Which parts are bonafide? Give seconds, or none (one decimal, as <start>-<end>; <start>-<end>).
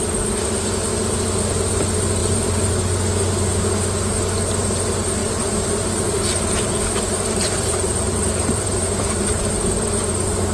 0.0-2.2; 2.7-5.2; 9.4-10.5